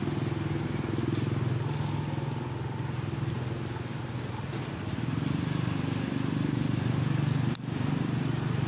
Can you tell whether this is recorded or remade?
recorded